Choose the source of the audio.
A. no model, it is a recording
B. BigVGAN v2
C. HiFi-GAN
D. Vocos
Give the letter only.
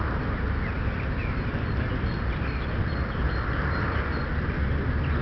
A